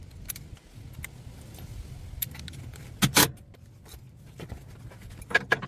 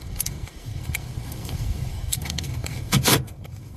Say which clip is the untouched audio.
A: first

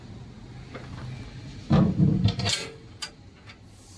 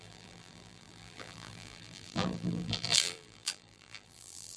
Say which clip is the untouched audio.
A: first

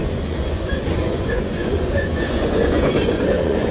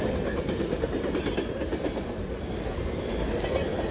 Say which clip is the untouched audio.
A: second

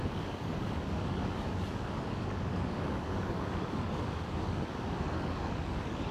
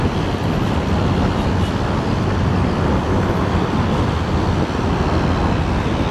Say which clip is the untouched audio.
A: second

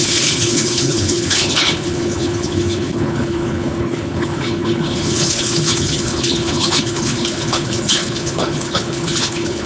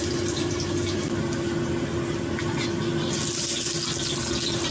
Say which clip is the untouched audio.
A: second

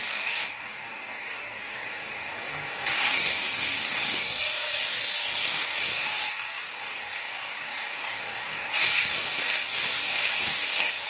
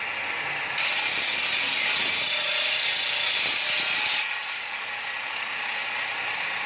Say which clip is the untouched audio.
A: second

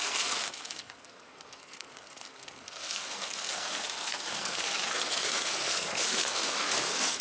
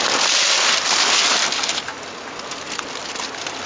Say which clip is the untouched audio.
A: second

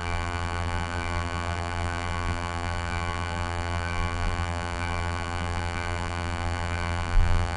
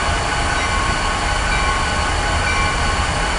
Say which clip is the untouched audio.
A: second